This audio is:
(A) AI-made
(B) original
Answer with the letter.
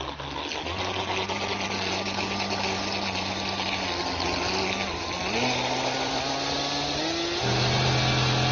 B